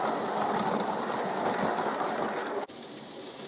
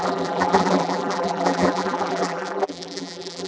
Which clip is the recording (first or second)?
first